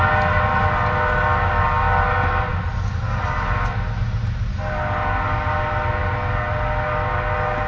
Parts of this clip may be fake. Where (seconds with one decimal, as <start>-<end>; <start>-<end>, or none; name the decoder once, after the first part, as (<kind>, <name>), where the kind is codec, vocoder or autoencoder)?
none